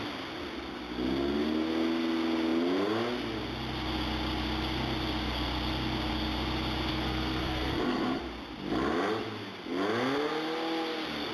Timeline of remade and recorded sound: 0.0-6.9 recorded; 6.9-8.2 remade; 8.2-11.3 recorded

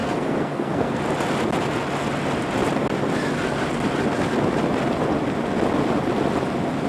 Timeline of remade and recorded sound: 0.0-1.0 remade; 1.0-6.9 recorded

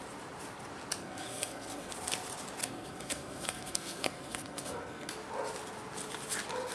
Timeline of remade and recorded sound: 0.0-1.0 recorded; 1.0-1.9 remade; 1.9-2.6 recorded; 2.6-5.1 remade; 5.1-6.7 recorded

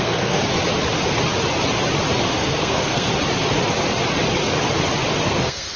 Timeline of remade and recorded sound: 0.0-0.4 remade; 0.4-2.3 recorded; 2.3-3.1 remade; 3.1-5.2 recorded; 5.2-5.8 remade

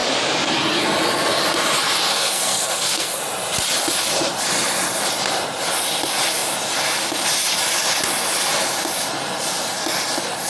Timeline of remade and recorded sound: 0.0-2.1 recorded; 2.1-3.2 remade; 3.2-10.5 recorded

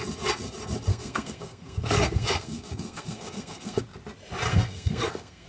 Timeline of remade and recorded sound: 0.0-0.9 recorded; 0.9-3.8 remade; 3.8-4.5 recorded; 4.5-5.5 remade